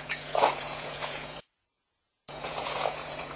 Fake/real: fake